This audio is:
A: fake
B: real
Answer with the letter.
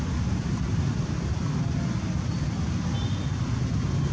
B